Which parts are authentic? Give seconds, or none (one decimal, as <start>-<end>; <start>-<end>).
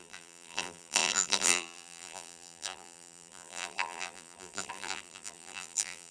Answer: none